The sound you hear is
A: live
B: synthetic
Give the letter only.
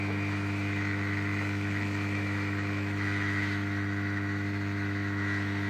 B